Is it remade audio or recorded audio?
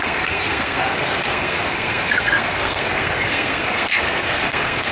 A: remade